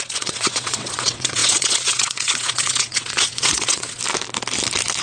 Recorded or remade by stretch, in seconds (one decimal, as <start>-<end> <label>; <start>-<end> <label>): 0.0-4.0 remade; 4.0-5.0 recorded